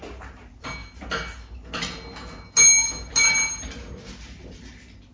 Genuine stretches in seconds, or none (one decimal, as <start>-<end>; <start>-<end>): 0.0-5.1